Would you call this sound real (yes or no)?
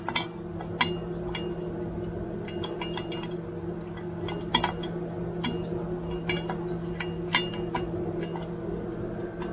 yes